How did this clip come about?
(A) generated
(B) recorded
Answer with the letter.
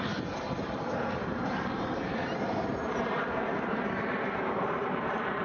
A